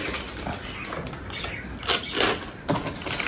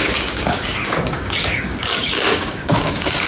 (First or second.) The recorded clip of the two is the first